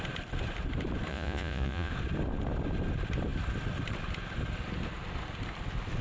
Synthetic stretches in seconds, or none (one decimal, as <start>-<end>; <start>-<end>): 1.1-1.9